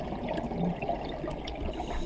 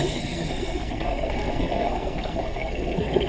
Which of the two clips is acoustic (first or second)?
first